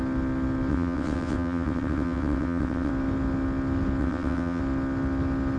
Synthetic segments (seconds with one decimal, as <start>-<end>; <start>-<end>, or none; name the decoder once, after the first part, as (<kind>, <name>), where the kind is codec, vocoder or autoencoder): 0.7-2.9 (vocoder, WaveNeXt); 4.0-4.6